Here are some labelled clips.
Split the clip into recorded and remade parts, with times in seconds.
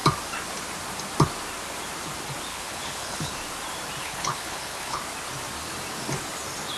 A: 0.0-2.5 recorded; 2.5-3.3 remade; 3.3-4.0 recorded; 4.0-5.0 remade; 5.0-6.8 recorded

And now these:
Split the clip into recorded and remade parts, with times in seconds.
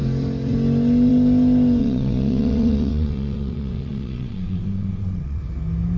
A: 0.0-1.8 recorded; 1.8-5.4 remade; 5.4-6.0 recorded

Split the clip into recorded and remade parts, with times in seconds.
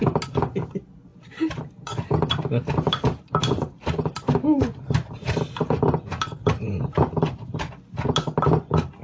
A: 0.0-1.1 recorded; 1.1-5.4 remade; 5.4-6.4 recorded; 6.4-7.0 remade; 7.0-9.0 recorded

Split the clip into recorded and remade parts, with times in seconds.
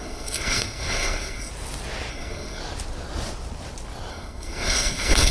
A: 0.0-1.5 remade; 1.5-2.1 recorded; 2.1-2.6 remade; 2.6-4.1 recorded; 4.1-5.3 remade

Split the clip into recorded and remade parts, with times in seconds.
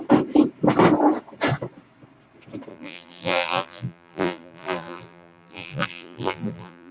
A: 0.0-2.7 recorded; 2.7-6.9 remade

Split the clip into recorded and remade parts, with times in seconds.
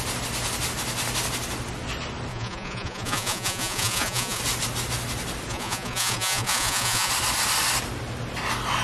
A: 0.0-2.3 recorded; 2.3-4.4 remade; 4.4-5.5 recorded; 5.5-7.1 remade; 7.1-8.8 recorded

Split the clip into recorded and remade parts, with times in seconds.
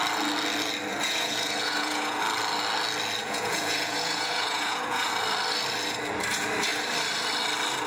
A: 0.0-0.9 recorded; 0.9-2.2 remade; 2.2-3.2 recorded; 3.2-5.1 remade; 5.1-7.9 recorded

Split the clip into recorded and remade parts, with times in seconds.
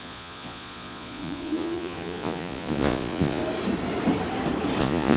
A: 0.0-3.4 remade; 3.4-4.8 recorded; 4.8-5.2 remade